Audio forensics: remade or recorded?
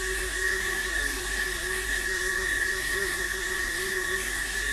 remade